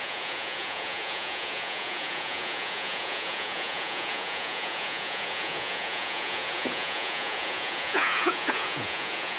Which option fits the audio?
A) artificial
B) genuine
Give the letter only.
A